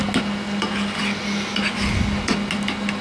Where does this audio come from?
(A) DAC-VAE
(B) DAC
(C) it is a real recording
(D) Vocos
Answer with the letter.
C